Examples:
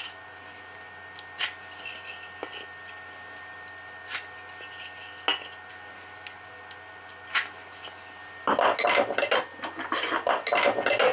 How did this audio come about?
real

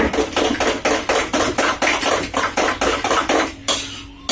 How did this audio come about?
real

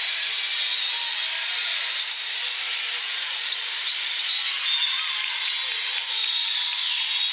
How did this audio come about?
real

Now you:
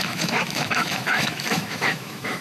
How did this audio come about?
fake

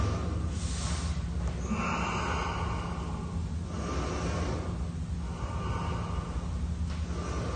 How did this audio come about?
real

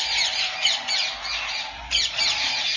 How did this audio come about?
real